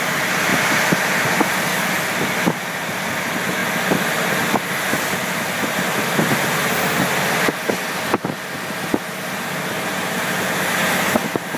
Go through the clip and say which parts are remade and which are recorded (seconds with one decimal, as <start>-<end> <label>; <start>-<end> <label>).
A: 0.0-11.6 recorded